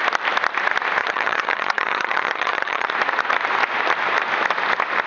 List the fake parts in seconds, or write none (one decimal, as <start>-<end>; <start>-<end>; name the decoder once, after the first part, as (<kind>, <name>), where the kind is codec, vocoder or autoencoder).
1.0-2.9 (vocoder, HiFi-GAN)